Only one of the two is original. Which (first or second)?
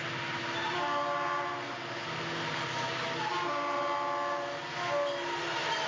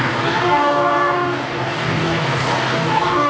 first